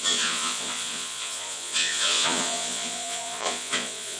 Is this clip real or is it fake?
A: fake